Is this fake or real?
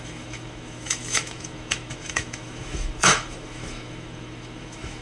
fake